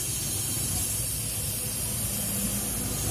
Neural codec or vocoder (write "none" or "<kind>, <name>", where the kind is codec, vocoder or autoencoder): none